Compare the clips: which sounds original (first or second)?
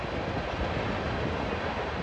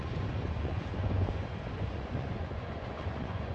first